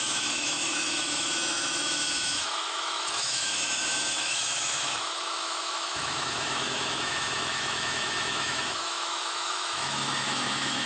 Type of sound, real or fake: fake